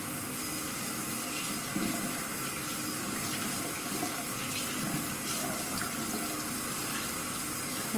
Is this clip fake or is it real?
real